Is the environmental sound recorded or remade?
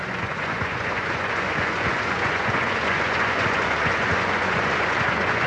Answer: remade